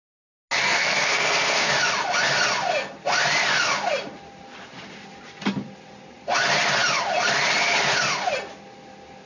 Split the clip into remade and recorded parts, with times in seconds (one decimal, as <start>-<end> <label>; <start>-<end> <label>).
0.0-0.6 recorded; 0.6-1.7 remade; 1.7-9.3 recorded